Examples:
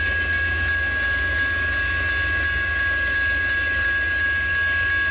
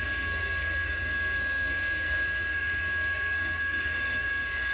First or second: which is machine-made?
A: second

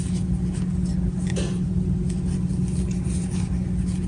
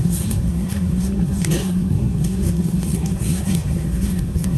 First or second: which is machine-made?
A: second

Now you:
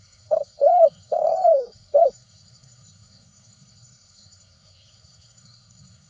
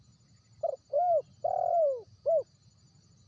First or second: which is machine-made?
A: first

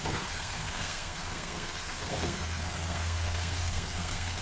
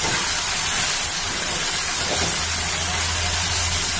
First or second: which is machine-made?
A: first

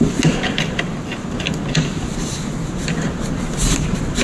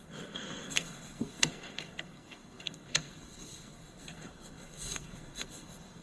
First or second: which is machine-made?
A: second